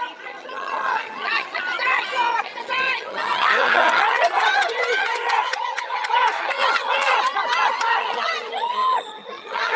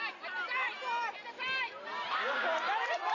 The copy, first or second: first